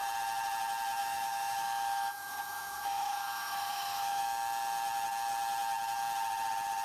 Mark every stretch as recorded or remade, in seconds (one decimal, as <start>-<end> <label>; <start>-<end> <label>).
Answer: 0.0-1.0 recorded; 1.0-4.2 remade; 4.2-6.8 recorded